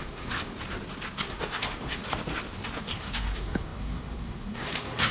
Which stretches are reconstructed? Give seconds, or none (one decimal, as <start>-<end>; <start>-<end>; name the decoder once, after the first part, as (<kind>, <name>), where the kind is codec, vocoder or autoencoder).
0.0-0.5 (codec, SNAC); 1.3-2.0; 2.8-5.1